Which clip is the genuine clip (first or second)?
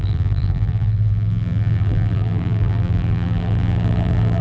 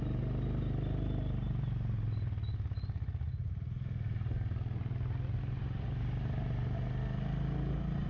second